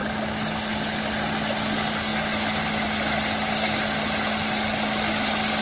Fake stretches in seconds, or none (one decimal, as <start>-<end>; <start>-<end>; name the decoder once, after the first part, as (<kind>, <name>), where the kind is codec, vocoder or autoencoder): none